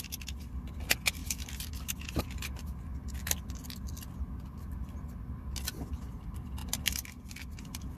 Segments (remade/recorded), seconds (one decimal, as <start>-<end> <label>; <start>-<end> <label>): 0.0-8.0 recorded